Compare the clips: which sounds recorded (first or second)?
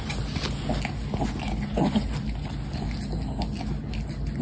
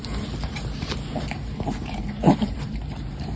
first